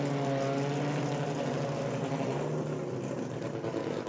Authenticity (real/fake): real